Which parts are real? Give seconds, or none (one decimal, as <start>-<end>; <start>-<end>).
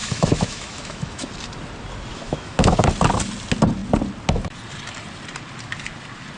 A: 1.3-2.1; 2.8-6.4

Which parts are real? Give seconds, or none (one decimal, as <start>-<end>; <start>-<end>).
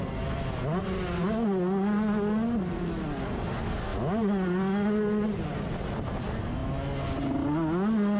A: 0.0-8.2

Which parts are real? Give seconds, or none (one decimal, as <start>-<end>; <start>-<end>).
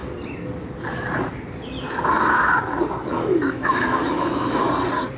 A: 0.0-3.1; 4.7-5.2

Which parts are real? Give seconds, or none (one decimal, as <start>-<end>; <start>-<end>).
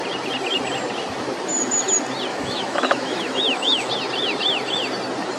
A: 0.0-2.3; 3.9-5.4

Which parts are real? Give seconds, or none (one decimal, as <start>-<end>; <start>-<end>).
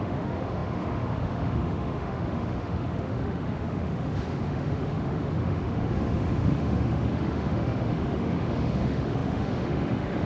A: none